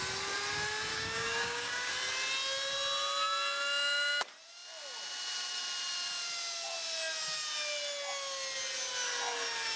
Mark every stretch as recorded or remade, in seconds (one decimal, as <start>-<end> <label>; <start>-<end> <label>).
0.0-0.9 recorded; 0.9-1.9 remade; 1.9-9.8 recorded